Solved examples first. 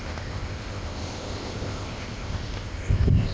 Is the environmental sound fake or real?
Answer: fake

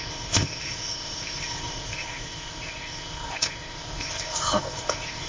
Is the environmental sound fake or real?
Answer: fake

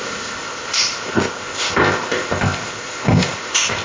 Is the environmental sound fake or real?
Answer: fake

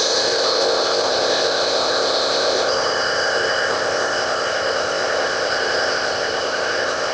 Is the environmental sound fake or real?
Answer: fake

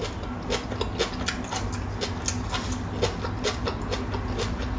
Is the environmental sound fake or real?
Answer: real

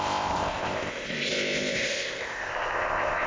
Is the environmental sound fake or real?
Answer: fake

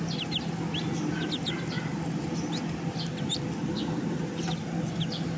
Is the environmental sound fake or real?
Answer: real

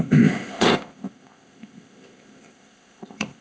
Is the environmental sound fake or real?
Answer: fake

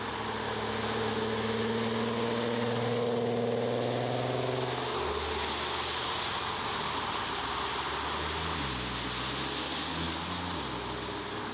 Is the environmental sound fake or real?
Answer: real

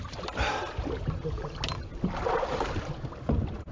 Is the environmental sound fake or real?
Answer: real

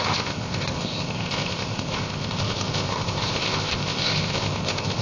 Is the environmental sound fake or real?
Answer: fake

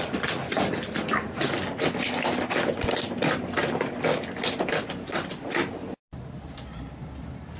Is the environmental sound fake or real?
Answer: real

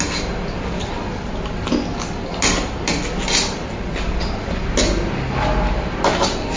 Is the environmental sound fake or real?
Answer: real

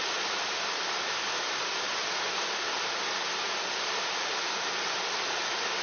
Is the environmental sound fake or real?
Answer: real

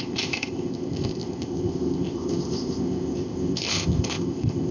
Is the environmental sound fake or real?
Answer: fake